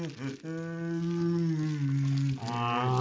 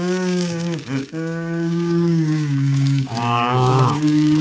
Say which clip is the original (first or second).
first